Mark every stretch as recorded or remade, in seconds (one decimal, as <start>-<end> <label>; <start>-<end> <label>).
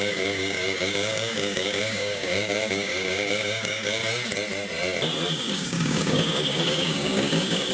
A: 0.0-4.0 remade; 4.0-5.3 recorded; 5.3-7.7 remade